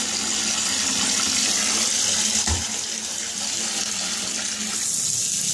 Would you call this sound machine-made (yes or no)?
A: no